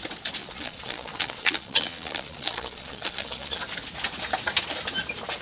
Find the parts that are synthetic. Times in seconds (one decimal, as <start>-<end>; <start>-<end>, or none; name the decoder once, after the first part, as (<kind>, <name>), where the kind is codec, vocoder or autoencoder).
0.4-3.6 (vocoder, Vocos)